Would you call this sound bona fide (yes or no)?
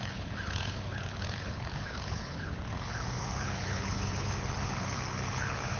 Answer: no